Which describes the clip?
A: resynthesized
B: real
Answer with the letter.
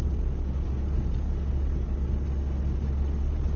B